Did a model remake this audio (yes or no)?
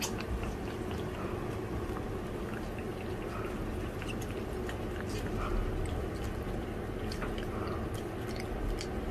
no